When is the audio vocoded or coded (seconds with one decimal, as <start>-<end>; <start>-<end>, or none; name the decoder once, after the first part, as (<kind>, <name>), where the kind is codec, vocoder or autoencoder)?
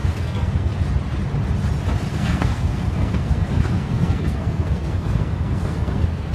0.0-0.8 (codec, SNAC); 2.1-6.3